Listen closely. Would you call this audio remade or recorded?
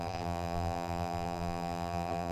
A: remade